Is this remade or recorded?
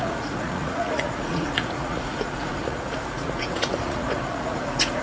remade